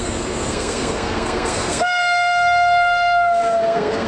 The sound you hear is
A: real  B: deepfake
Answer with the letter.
B